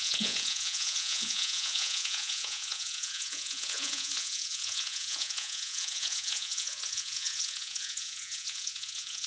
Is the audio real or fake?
fake